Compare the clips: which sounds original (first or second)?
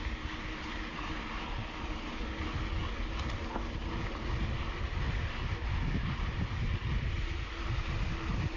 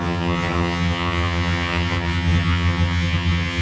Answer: first